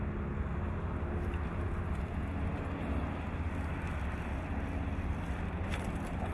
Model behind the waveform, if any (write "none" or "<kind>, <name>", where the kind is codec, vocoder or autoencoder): none